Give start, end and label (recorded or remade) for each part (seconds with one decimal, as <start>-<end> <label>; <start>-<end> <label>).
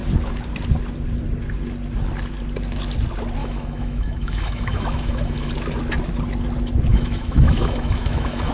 0.0-3.4 recorded; 3.4-5.5 remade; 5.5-6.9 recorded; 6.9-8.5 remade